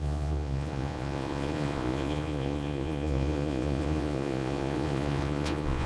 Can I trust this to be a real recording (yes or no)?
no